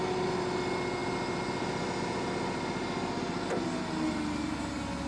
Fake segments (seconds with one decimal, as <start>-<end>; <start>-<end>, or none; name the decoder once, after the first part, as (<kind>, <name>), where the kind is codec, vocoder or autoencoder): none